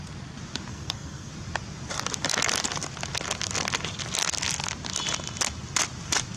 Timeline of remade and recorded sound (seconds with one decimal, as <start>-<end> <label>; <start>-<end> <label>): 0.0-0.7 recorded; 0.7-1.3 remade; 1.3-6.4 recorded